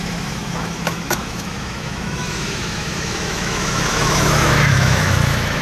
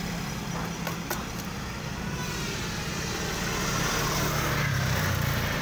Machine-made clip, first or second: first